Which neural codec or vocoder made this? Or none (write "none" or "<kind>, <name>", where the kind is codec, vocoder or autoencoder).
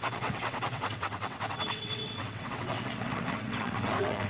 vocoder, WaveNeXt